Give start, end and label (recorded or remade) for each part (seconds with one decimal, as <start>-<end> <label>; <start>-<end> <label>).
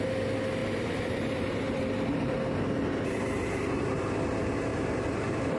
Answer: 0.0-0.6 recorded; 0.6-4.0 remade; 4.0-4.7 recorded; 4.7-5.6 remade